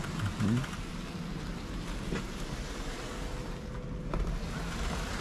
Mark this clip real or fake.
real